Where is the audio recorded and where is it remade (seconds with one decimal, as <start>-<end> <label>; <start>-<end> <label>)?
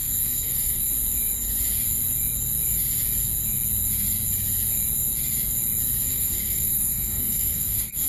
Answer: 0.0-0.9 remade; 0.9-6.1 recorded; 6.1-8.1 remade